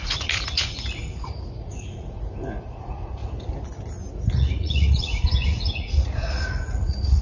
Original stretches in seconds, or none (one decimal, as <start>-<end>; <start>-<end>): 3.2-4.4

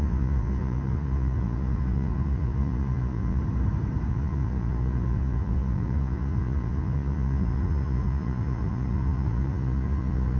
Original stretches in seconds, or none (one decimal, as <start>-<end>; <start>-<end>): 3.4-4.1

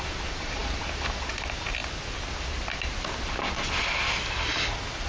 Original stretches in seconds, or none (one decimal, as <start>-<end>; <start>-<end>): 0.0-5.1

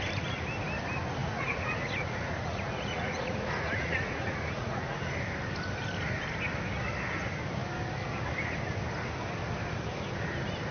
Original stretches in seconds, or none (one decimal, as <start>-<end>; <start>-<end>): 0.0-1.2; 5.0-10.7

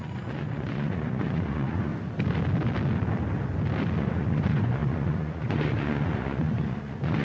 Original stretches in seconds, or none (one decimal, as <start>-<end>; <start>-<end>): 1.9-4.0

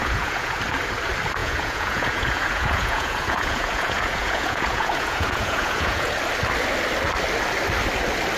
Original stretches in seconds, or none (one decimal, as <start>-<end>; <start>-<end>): 0.6-1.4; 6.1-8.4

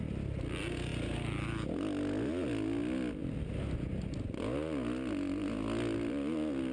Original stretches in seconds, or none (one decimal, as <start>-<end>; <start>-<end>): 0.0-6.7